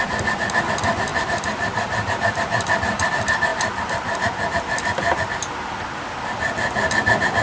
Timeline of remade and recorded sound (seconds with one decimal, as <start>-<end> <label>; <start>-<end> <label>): 0.0-1.1 recorded; 1.1-3.1 remade; 3.1-7.4 recorded